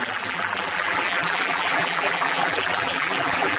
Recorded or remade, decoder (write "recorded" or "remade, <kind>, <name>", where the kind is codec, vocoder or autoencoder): remade, vocoder, BigVGAN v2